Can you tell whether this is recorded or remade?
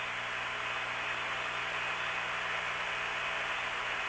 recorded